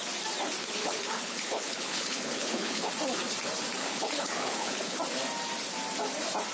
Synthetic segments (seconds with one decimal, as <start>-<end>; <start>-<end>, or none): 0.6-2.9; 3.8-5.0